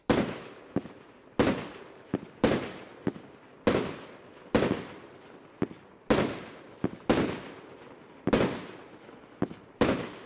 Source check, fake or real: real